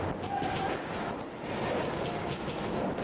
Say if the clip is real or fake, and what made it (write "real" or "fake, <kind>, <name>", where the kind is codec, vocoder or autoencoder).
real